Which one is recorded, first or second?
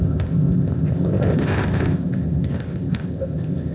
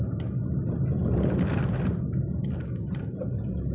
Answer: second